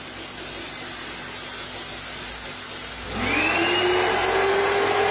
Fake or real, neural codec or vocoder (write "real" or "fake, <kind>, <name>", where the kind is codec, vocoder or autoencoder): real